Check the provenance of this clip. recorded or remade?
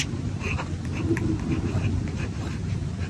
recorded